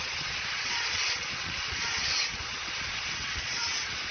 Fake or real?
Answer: fake